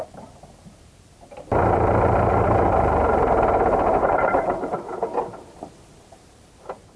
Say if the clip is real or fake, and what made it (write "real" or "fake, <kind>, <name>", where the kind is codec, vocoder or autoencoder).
fake, vocoder, BigVGAN v2